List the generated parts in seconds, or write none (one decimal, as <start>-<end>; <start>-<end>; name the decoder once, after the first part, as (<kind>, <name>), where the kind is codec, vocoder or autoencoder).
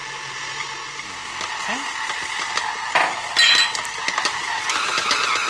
none